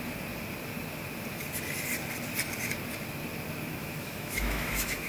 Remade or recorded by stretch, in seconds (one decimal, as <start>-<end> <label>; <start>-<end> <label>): 0.0-3.8 recorded; 3.8-5.1 remade